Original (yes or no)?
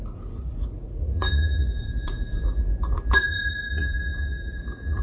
no